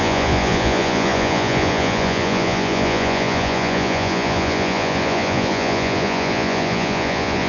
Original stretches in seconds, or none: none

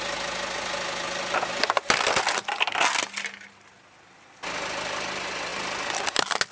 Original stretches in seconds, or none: 0.0-6.5

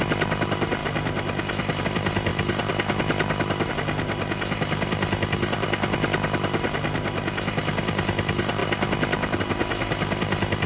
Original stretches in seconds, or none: 0.0-10.7

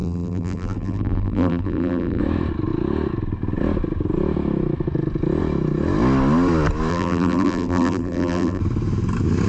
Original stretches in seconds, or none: 2.2-6.9; 8.6-9.5

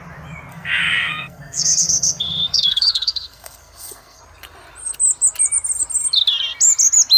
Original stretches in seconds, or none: 0.0-0.5; 4.2-7.2

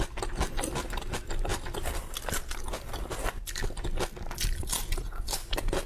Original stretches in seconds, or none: 0.0-5.9